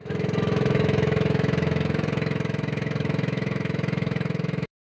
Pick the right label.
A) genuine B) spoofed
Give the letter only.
B